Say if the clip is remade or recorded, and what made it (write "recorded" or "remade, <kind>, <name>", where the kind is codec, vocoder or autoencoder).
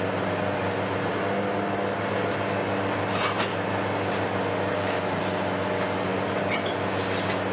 recorded